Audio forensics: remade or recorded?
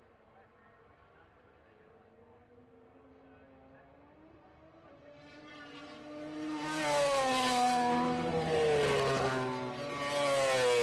recorded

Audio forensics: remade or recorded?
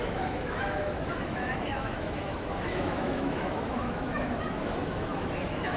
remade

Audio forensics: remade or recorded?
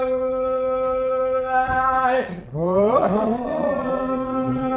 remade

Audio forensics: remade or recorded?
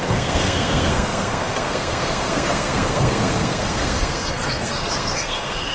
remade